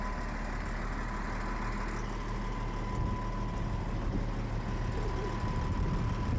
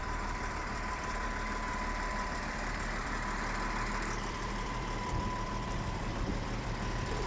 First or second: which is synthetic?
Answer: second